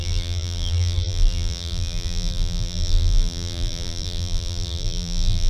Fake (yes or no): yes